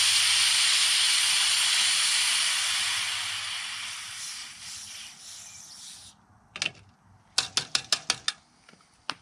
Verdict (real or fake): real